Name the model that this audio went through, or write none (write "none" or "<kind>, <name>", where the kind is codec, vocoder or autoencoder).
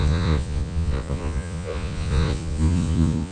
vocoder, Vocos